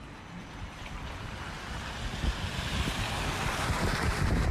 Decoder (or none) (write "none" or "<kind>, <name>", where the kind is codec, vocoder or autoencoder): none